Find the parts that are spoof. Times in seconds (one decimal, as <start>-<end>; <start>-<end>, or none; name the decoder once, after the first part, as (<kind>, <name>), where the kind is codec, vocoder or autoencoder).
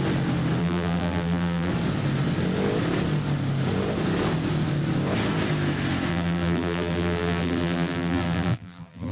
0.6-1.7 (vocoder, BigVGAN v2); 6.1-9.1